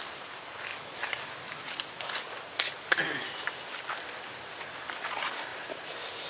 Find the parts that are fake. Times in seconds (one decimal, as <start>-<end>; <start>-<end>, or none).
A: 5.5-6.3